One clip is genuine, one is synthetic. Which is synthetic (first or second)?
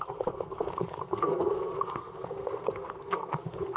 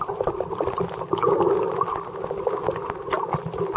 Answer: first